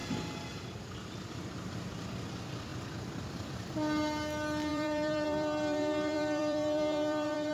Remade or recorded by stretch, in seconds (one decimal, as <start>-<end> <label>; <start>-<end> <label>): 0.0-2.1 remade; 2.1-2.7 recorded; 2.7-3.2 remade; 3.2-4.7 recorded; 4.7-7.5 remade

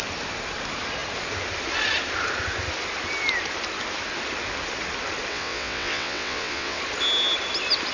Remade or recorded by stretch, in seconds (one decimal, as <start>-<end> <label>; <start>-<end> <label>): 0.0-5.3 recorded; 5.3-6.8 remade; 6.8-7.9 recorded

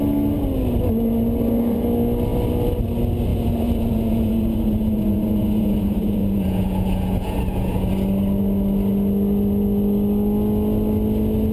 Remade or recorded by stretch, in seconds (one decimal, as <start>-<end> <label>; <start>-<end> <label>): 0.0-3.3 recorded; 3.3-7.9 remade; 7.9-11.5 recorded

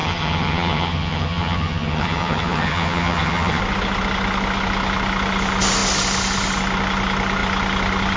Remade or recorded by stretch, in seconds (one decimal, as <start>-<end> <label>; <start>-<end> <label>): 0.0-3.6 remade; 3.6-8.2 recorded